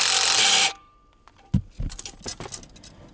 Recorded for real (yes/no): yes